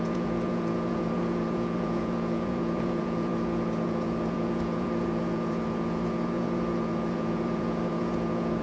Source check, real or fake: fake